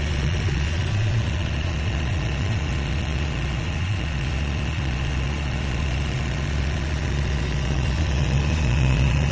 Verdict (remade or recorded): remade